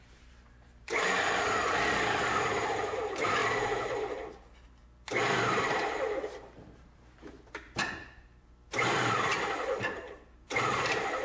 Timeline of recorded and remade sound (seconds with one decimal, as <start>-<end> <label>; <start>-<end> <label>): 0.0-3.4 remade; 3.4-5.4 recorded; 5.4-9.3 remade; 9.3-9.8 recorded; 9.8-11.2 remade